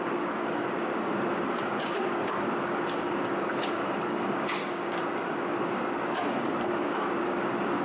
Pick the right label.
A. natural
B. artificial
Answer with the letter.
B